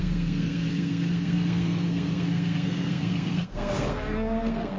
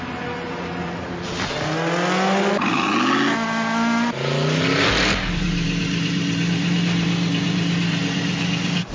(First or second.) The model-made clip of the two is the first